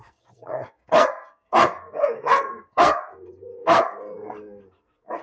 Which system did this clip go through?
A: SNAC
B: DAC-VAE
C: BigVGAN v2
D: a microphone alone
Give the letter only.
A